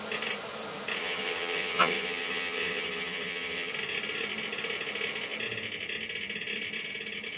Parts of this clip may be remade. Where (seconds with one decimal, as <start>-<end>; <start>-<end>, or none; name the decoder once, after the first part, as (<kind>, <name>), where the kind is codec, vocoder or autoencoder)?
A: 1.0-3.7 (vocoder, HiFi-GAN)